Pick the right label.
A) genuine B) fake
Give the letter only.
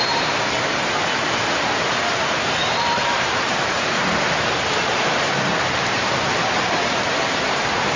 B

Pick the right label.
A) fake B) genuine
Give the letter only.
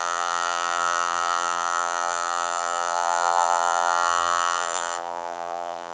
A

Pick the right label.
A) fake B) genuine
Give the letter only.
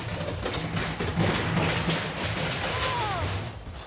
B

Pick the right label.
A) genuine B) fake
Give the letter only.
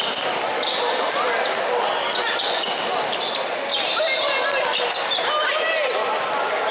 A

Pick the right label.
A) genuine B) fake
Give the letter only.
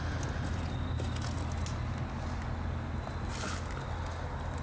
A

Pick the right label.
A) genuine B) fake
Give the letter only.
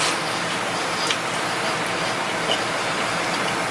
A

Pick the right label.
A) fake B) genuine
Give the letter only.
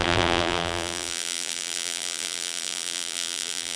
A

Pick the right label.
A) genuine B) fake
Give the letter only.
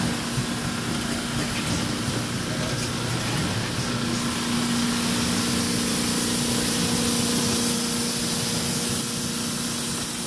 A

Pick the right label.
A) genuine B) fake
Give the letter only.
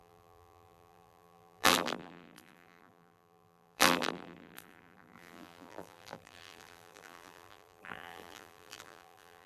B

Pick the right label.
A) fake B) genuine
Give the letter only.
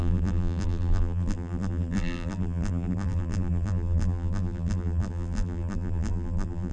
A